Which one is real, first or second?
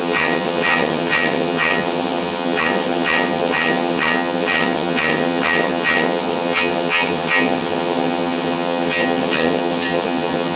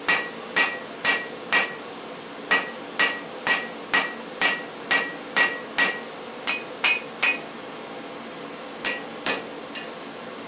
second